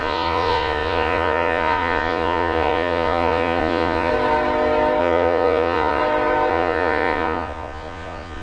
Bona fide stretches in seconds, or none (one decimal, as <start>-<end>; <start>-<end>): 4.1-5.0; 6.0-6.5